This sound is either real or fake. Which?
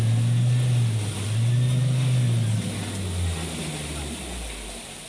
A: real